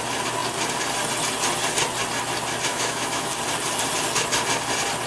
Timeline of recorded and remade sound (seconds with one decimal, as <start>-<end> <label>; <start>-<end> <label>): 0.0-2.7 recorded; 2.7-3.3 remade; 3.3-5.1 recorded